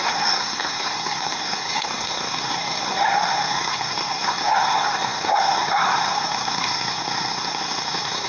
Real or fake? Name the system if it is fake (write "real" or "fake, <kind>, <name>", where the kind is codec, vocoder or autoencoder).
fake, codec, SNAC